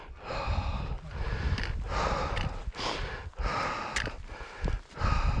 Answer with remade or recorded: recorded